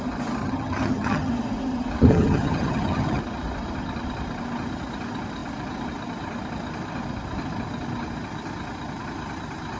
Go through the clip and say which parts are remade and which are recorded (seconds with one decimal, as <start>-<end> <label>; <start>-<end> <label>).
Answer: 0.0-0.4 recorded; 0.4-1.3 remade; 1.3-2.1 recorded; 2.1-3.2 remade; 3.2-9.8 recorded